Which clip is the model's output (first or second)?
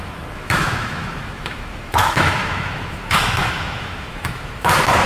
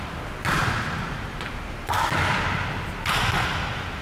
first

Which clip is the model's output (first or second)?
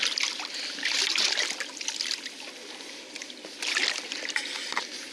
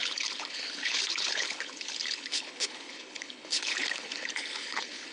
second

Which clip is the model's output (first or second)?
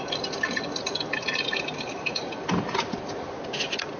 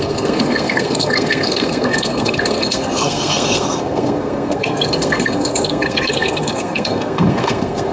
second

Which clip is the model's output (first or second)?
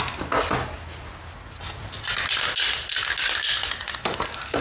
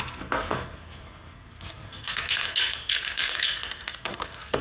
second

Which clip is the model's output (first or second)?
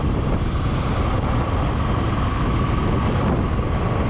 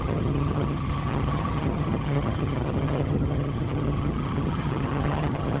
second